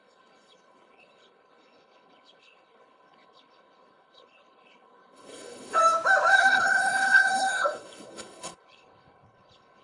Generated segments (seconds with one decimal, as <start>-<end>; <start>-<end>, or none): 0.0-5.8; 6.3-9.8